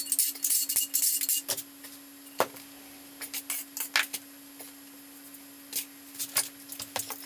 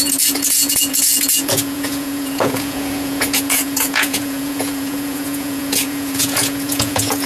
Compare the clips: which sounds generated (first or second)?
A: second